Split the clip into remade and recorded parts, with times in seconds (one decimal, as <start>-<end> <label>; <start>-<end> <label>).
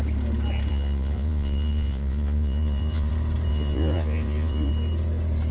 0.0-0.7 recorded; 0.7-3.1 remade; 3.1-3.5 recorded; 3.5-4.7 remade; 4.7-5.5 recorded